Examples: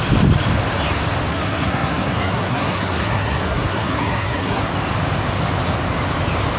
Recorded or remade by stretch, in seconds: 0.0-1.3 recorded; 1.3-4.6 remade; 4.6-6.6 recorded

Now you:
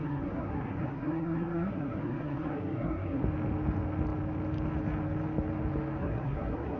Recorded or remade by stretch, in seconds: 0.0-3.2 remade; 3.2-6.0 recorded; 6.0-6.8 remade

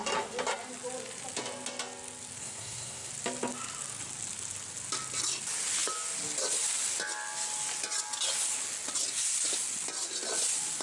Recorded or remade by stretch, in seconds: 0.0-2.4 recorded; 2.4-3.1 remade; 3.1-10.8 recorded

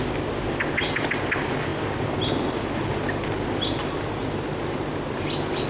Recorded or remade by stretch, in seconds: 0.0-5.7 recorded

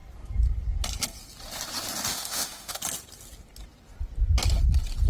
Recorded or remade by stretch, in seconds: 0.0-2.1 recorded; 2.1-2.8 remade; 2.8-5.1 recorded